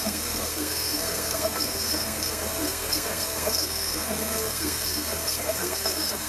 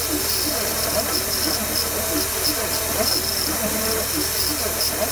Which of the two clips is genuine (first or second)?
second